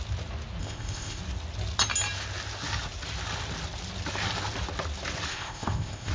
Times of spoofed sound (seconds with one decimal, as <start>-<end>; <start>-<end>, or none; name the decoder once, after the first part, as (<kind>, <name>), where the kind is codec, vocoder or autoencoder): 0.6-1.2 (codec, ZipCodec); 5.3-6.1